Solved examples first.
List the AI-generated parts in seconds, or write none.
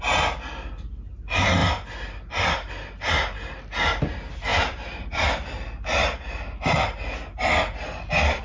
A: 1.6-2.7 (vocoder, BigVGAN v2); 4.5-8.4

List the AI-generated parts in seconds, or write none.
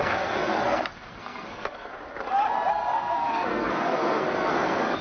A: 0.0-1.9 (codec, SNAC); 2.7-5.0